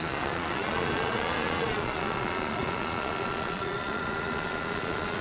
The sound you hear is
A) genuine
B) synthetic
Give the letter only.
B